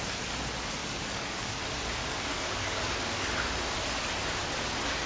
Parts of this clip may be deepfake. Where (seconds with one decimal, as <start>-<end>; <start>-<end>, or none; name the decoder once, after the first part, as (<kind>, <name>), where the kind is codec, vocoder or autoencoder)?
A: 0.8-1.6 (codec, DAC); 2.0-3.0